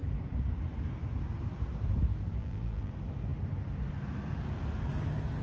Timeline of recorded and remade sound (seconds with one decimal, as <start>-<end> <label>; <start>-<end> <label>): 0.0-2.4 recorded; 2.4-2.9 remade; 2.9-5.4 recorded